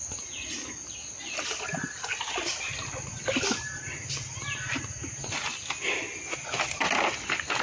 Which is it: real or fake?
real